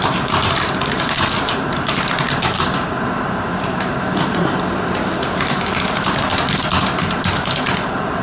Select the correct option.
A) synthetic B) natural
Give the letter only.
A